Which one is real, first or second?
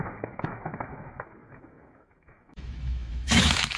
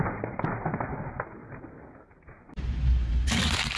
second